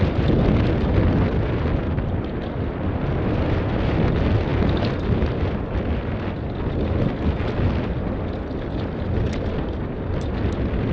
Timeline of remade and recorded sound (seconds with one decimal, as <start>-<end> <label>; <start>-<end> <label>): 0.0-10.9 recorded